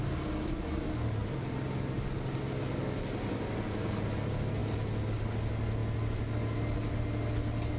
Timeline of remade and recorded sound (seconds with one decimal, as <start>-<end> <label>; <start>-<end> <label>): 0.0-7.8 recorded